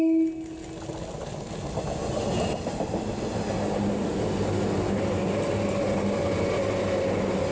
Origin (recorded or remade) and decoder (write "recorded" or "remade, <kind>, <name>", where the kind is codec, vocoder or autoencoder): recorded